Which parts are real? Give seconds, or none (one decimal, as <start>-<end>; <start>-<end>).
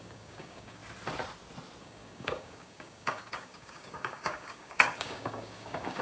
0.8-1.8